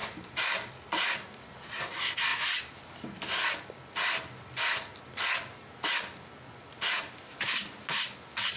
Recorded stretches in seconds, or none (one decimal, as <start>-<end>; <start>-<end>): 0.7-6.7; 7.7-8.6